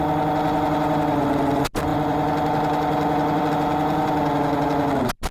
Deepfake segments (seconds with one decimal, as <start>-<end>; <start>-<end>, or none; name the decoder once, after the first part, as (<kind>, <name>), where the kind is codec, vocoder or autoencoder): 1.9-3.5 (vocoder, BigVGAN v2)